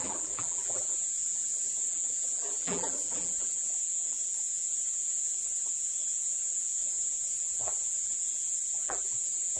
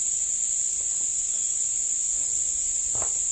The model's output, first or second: first